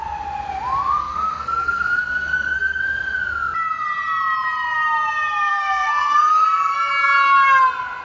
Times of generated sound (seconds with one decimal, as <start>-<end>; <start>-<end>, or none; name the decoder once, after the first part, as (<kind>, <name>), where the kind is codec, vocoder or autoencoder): 1.0-2.8 (codec, SNAC); 5.5-6.9